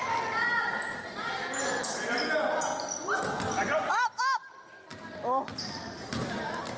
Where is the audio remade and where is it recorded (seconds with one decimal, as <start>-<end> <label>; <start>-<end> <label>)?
0.0-6.8 recorded